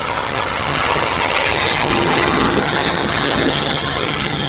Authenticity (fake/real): fake